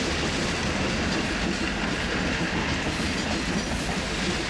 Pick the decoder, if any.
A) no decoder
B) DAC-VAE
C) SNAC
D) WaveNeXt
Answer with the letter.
A